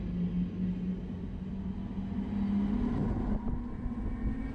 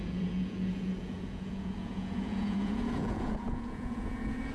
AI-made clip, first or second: second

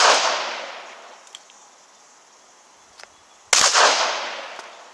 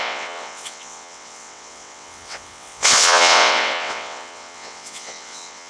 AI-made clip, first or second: second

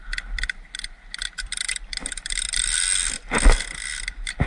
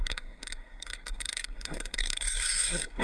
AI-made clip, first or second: second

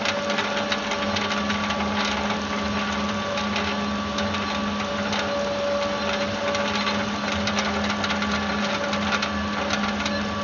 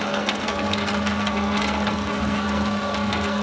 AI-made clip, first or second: second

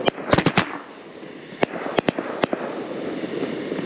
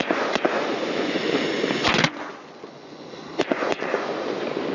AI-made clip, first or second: second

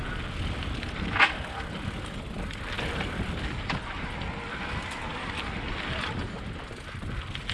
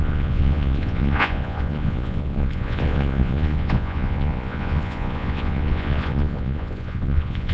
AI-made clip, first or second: second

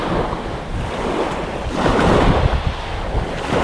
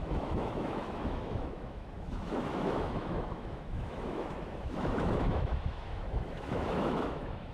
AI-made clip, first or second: second